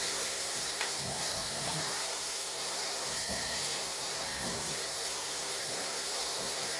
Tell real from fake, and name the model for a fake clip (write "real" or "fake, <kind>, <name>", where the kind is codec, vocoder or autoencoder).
fake, codec, SNAC